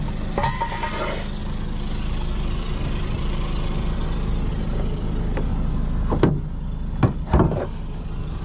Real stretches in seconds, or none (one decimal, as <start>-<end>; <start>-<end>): 5.5-7.0